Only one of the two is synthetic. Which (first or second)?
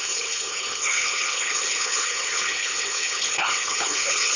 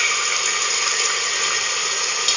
first